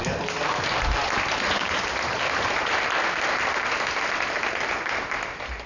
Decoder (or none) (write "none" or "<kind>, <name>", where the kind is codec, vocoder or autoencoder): none